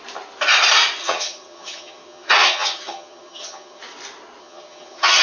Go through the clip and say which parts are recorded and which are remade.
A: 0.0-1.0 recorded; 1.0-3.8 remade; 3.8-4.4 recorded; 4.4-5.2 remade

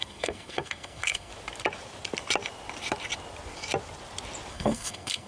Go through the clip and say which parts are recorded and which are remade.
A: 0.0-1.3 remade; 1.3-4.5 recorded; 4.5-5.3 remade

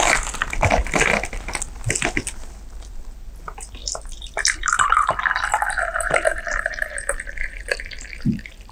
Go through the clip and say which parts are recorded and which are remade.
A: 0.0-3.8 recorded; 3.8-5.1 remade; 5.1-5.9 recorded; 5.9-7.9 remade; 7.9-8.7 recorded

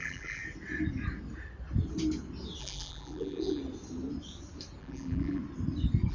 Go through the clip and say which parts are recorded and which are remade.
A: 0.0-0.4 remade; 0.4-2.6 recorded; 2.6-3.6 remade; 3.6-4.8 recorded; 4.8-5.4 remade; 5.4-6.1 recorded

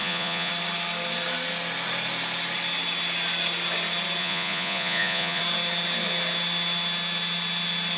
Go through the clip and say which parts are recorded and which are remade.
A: 0.0-0.5 remade; 0.5-4.2 recorded; 4.2-5.4 remade; 5.4-8.0 recorded

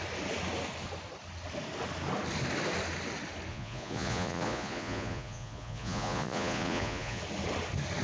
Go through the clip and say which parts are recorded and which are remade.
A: 0.0-3.5 recorded; 3.5-7.2 remade; 7.2-8.0 recorded

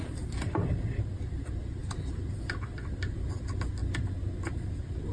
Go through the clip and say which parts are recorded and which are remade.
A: 0.0-5.1 recorded